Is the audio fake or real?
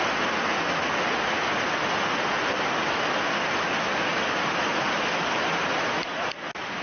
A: real